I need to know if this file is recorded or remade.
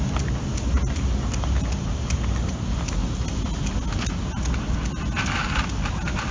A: recorded